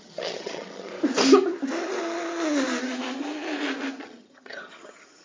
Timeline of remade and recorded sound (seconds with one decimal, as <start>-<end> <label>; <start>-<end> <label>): 0.0-0.9 remade; 0.9-4.0 recorded; 4.0-5.2 remade